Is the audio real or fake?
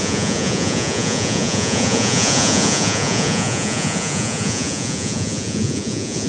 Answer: fake